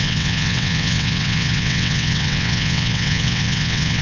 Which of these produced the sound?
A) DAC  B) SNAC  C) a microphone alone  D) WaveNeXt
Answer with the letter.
D